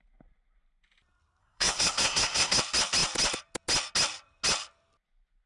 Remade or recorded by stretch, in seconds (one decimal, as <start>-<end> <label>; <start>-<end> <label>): 0.0-1.4 recorded; 1.4-2.6 remade; 2.6-5.5 recorded